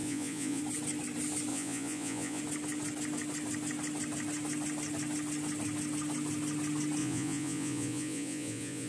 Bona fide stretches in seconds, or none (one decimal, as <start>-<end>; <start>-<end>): 0.6-1.5; 2.4-7.0